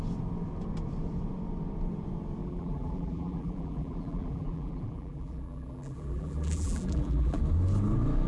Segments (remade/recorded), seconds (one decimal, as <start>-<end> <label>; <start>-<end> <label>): 0.0-2.4 recorded; 2.4-7.4 remade; 7.4-8.3 recorded